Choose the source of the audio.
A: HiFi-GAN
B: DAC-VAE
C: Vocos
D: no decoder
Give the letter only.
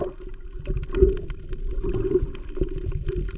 D